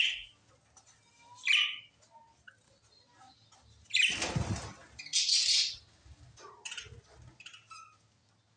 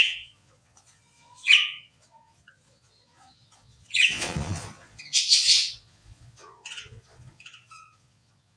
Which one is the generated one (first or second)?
second